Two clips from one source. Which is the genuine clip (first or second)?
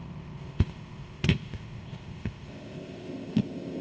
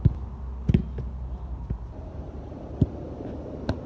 second